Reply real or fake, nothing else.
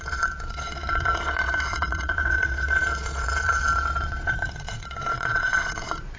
fake